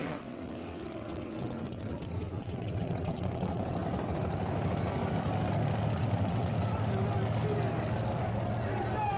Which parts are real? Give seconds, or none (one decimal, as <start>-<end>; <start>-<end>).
3.8-6.0; 6.5-9.2